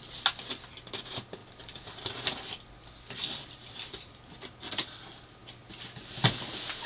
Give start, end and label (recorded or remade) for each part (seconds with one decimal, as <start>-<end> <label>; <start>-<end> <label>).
0.0-6.9 recorded